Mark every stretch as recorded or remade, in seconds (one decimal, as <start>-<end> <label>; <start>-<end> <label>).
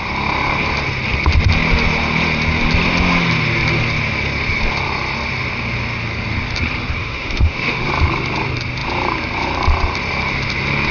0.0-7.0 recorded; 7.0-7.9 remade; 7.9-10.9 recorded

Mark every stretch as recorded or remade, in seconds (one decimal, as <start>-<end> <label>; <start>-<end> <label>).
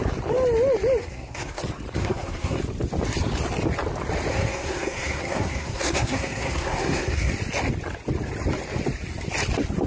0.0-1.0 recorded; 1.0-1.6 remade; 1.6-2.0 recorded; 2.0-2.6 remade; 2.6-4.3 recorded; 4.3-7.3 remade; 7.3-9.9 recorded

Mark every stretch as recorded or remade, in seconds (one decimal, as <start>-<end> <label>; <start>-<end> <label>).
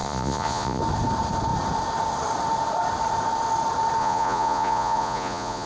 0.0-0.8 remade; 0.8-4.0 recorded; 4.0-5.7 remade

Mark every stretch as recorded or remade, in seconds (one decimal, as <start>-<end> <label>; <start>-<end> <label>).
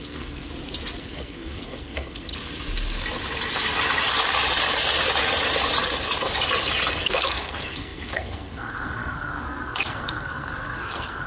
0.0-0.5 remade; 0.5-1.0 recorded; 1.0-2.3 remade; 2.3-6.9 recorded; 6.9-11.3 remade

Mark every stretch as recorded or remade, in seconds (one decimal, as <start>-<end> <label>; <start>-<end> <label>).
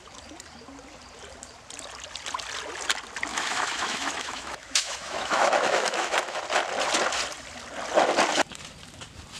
0.0-3.3 recorded; 3.3-6.4 remade; 6.4-9.4 recorded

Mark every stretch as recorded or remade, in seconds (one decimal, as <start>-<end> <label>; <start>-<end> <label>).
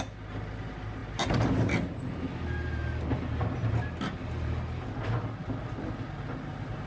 0.0-6.9 recorded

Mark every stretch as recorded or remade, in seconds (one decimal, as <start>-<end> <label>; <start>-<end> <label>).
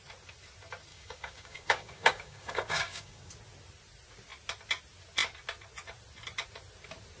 0.0-0.9 recorded; 0.9-3.3 remade; 3.3-7.2 recorded